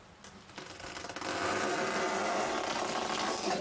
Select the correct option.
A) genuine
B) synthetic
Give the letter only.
A